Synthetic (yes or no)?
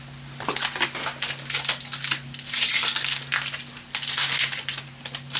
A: no